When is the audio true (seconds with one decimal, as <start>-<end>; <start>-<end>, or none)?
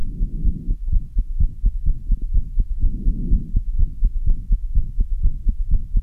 0.0-6.0